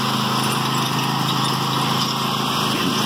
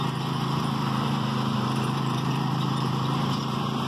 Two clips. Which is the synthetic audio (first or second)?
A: second